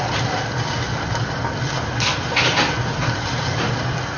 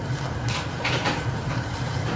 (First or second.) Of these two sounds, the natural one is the first